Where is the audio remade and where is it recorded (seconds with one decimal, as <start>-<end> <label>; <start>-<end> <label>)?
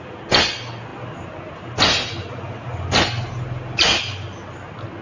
0.0-5.0 recorded